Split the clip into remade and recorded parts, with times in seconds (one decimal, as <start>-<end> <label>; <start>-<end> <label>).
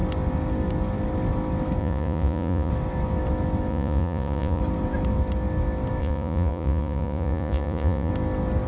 0.0-1.8 recorded; 1.8-2.7 remade; 2.7-3.7 recorded; 3.7-4.6 remade; 4.6-6.0 recorded; 6.0-8.1 remade; 8.1-8.7 recorded